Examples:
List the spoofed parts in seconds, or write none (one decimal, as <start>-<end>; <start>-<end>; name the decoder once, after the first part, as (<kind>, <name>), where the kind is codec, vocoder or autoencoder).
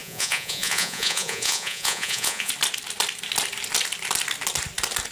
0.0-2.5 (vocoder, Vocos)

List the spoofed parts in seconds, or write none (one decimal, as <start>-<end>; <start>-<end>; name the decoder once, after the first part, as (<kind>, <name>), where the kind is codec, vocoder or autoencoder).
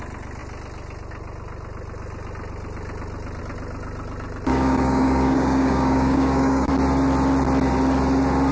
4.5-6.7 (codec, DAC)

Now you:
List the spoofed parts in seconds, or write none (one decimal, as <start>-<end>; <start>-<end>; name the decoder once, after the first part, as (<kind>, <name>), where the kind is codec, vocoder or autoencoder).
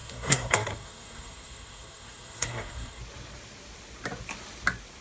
0.0-3.0 (codec, SNAC)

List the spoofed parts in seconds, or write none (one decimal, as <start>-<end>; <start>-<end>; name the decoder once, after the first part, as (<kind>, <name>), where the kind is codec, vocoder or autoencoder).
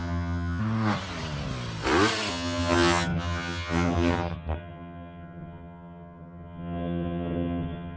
0.0-0.6 (vocoder, HiFi-GAN); 2.3-8.0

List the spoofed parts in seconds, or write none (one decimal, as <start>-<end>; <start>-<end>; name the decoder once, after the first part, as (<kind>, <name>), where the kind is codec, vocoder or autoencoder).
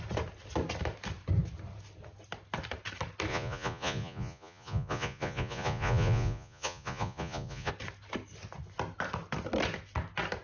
3.3-7.7 (vocoder, Vocos)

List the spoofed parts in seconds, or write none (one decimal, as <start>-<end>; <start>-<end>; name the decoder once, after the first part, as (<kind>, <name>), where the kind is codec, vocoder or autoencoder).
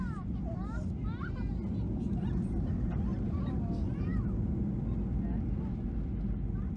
none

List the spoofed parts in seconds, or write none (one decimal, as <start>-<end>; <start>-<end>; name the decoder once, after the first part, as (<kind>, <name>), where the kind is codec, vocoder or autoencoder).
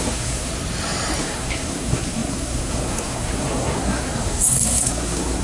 0.0-0.5 (codec, SNAC); 1.2-5.4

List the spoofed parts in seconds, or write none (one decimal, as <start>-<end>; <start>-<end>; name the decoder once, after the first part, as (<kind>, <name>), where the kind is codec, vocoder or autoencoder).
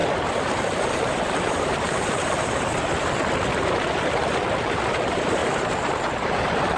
1.1-2.7 (vocoder, BigVGAN v2); 4.7-6.8